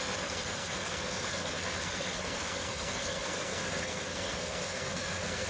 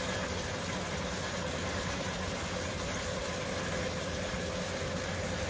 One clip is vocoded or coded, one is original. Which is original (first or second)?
second